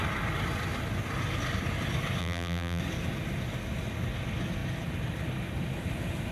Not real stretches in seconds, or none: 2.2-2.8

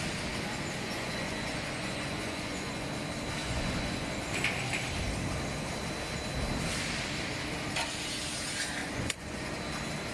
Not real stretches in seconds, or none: 0.8-2.9; 3.4-4.1; 8.8-9.5

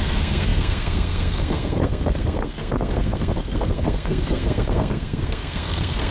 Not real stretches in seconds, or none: 0.0-6.1

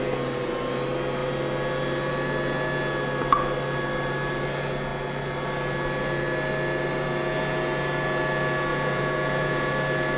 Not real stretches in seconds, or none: 8.7-9.7

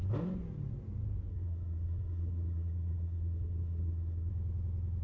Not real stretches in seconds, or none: 1.3-4.3

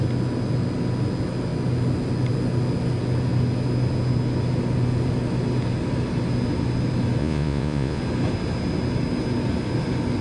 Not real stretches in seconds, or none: 7.2-8.0